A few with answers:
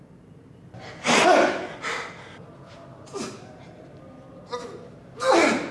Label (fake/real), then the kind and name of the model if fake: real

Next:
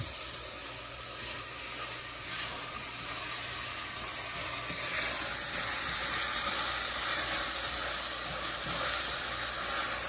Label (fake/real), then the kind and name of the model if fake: real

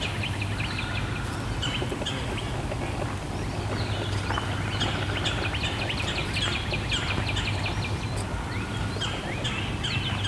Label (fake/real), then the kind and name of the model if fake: real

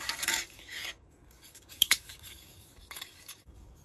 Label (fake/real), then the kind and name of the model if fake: fake, codec, DAC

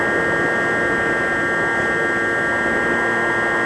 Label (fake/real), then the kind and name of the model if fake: real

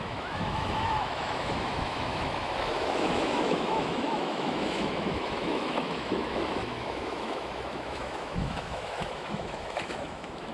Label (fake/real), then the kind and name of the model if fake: fake, autoencoder, DAC-VAE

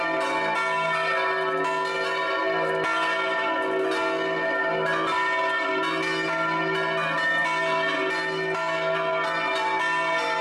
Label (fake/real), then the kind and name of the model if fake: real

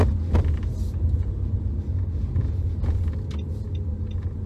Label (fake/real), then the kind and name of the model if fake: real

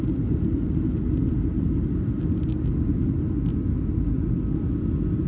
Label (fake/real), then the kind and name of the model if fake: real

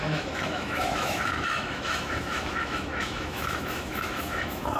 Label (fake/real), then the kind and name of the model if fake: fake, autoencoder, DAC-VAE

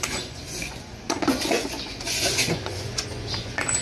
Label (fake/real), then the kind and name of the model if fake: fake, vocoder, Vocos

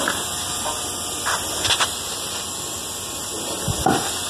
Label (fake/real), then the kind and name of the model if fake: real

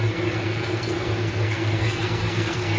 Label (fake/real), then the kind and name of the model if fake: fake, codec, SNAC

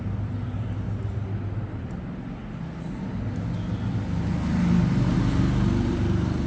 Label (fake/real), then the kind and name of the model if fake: real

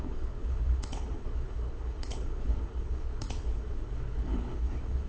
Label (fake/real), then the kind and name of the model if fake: fake, codec, HILCodec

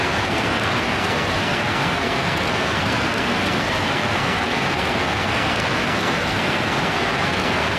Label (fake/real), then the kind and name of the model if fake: fake, codec, SNAC